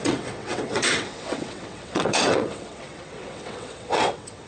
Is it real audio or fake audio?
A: fake